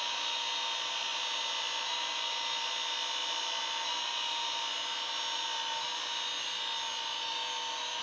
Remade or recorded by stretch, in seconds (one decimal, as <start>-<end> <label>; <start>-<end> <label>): 0.0-8.0 recorded